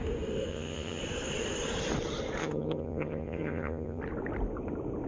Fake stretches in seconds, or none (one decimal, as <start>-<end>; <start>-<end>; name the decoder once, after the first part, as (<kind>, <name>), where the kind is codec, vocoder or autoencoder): 0.5-1.0 (vocoder, HiFi-GAN); 2.4-4.0